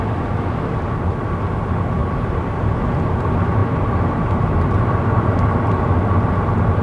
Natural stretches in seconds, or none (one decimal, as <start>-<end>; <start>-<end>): 0.0-2.0; 2.7-3.6; 5.0-6.8